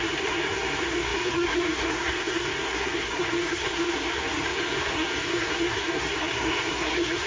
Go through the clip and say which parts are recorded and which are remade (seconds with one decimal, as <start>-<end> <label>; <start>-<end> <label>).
0.0-7.3 remade

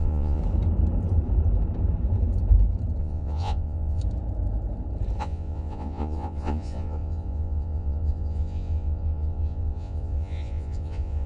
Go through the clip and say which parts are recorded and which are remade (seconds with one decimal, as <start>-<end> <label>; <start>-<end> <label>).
0.0-0.4 remade; 0.4-3.0 recorded; 3.0-4.0 remade; 4.0-5.2 recorded; 5.2-11.3 remade

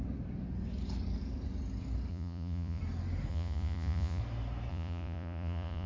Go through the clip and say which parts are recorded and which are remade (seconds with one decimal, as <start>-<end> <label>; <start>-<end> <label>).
0.0-2.1 recorded; 2.1-2.8 remade; 2.8-3.3 recorded; 3.3-4.2 remade; 4.2-4.7 recorded; 4.7-5.9 remade

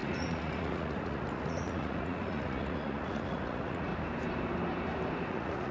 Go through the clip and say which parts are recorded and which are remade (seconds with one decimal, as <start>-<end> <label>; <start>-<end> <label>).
0.0-3.9 remade; 3.9-5.3 recorded; 5.3-5.7 remade

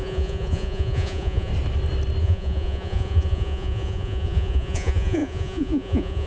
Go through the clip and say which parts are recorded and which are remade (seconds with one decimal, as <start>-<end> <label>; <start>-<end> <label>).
0.0-1.5 remade; 1.5-2.2 recorded; 2.2-6.3 remade

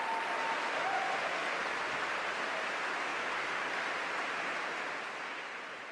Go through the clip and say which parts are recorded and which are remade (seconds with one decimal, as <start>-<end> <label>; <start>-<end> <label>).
0.0-5.9 recorded